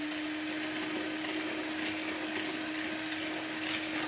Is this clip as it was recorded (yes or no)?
yes